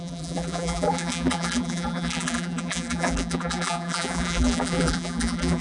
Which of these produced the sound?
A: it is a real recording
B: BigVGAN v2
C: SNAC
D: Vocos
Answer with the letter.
B